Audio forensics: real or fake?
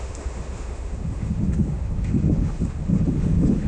fake